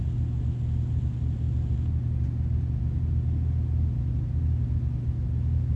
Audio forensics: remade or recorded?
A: recorded